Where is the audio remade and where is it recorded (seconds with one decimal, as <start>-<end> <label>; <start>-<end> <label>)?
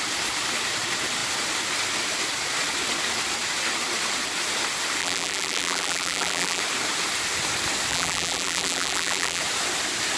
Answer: 0.0-5.0 recorded; 5.0-6.6 remade; 6.6-7.9 recorded; 7.9-9.4 remade; 9.4-10.2 recorded